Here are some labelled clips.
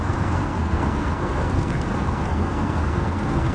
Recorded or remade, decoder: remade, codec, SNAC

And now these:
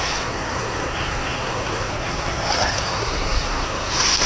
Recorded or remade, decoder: remade, codec, SNAC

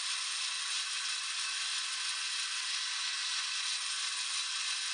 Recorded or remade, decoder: recorded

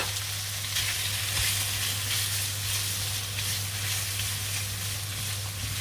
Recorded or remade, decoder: recorded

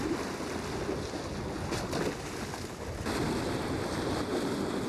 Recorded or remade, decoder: recorded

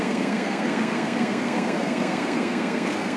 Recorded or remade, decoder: remade, codec, SNAC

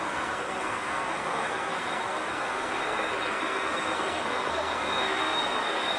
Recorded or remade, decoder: remade, codec, SNAC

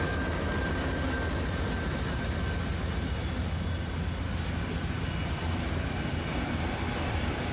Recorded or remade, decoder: recorded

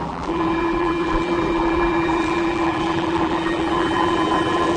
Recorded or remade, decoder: remade, vocoder, BigVGAN v2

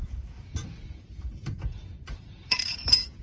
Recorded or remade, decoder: remade, vocoder, Vocos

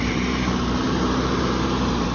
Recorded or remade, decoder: remade, vocoder, BigVGAN v2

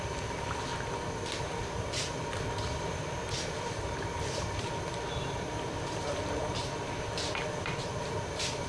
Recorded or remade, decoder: remade, vocoder, BigVGAN v2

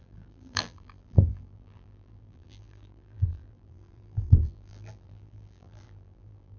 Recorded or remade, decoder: remade, vocoder, BigVGAN v2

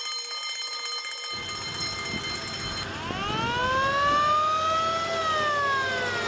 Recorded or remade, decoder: recorded